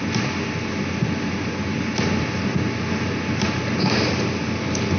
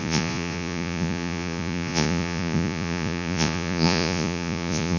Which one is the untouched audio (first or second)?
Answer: first